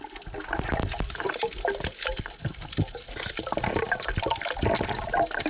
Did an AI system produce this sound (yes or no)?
no